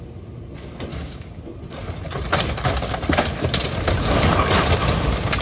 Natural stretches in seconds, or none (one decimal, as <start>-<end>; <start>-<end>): 0.0-0.9; 1.4-5.4